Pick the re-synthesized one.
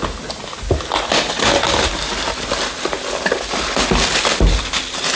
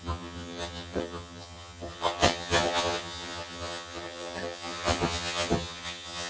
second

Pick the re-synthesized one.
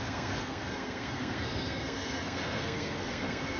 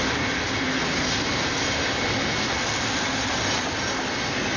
first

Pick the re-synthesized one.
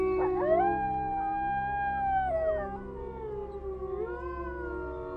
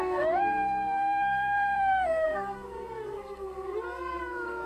second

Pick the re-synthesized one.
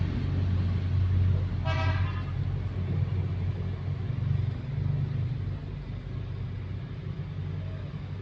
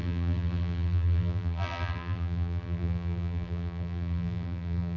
second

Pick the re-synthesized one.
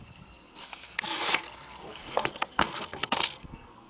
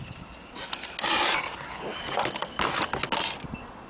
first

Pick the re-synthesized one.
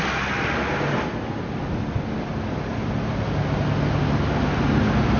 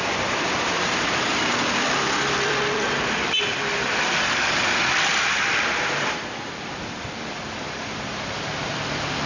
second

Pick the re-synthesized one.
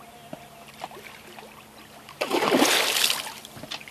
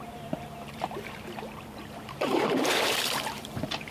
second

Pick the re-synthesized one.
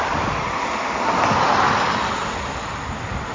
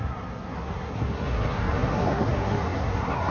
second